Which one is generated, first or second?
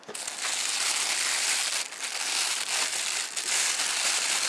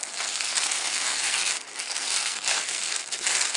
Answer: second